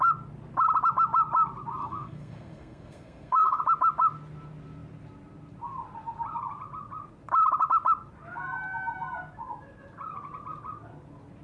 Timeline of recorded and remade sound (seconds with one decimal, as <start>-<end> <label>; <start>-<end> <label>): 0.0-1.8 recorded; 1.8-3.6 remade; 3.6-11.4 recorded